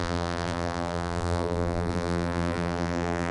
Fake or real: fake